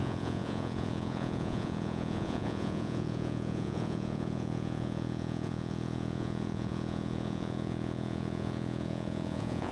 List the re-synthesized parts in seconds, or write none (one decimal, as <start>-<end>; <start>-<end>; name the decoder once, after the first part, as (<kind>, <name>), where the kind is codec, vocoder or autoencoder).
0.0-9.7 (vocoder, Vocos)